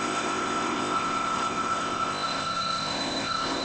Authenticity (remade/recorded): remade